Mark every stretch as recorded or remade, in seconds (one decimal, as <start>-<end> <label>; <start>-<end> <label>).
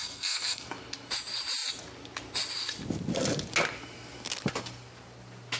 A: 0.0-0.7 remade; 0.7-5.6 recorded